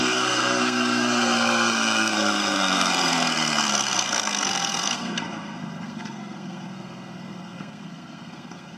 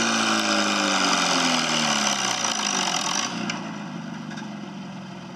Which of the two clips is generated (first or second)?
first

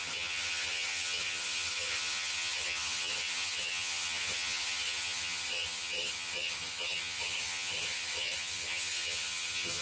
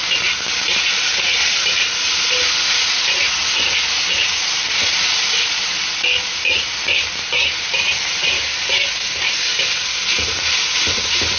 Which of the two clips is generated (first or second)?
first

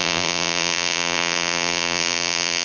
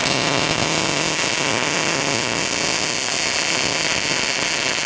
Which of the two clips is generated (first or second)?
first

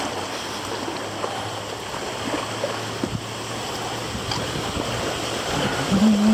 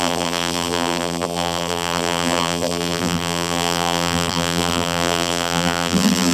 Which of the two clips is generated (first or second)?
second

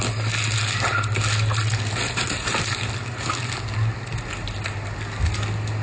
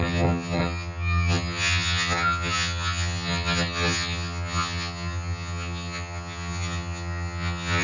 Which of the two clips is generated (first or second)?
second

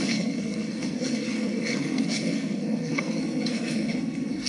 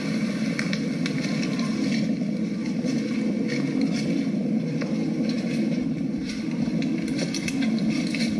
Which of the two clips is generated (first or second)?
first